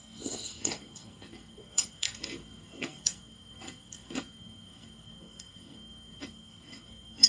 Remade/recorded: remade